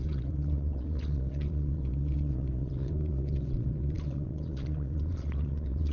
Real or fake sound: fake